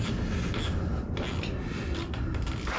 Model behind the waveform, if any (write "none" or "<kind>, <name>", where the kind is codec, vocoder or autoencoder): none